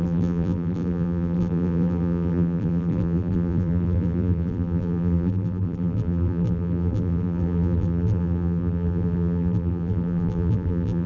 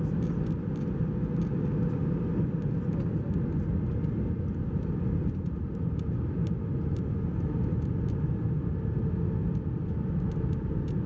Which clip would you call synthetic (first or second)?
first